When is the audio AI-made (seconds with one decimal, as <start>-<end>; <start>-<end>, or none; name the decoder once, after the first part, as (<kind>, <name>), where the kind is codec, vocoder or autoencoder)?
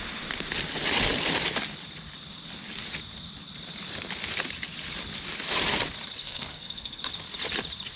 6.2-7.0 (codec, SNAC)